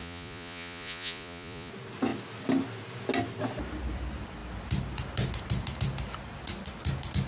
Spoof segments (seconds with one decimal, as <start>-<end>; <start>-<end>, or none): 0.0-1.7